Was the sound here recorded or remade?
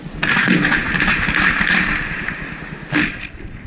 recorded